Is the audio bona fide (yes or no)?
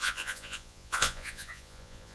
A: no